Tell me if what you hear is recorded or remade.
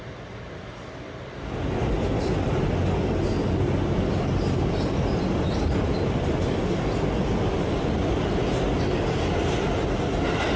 recorded